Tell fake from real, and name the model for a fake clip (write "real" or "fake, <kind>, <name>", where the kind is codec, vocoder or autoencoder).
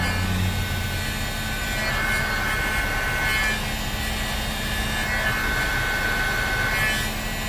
real